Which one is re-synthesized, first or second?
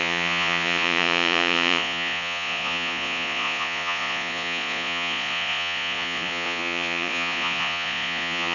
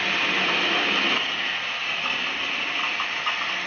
first